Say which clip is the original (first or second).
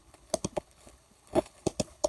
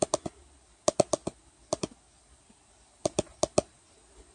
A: second